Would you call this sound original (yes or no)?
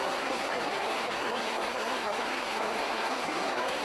no